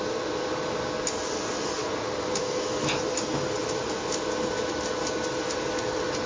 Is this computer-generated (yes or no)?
no